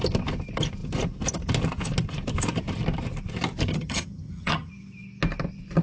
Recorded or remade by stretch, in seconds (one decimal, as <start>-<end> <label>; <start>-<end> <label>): 0.0-3.7 recorded; 3.7-4.7 remade; 4.7-5.8 recorded